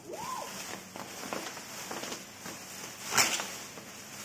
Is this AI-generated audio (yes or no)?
no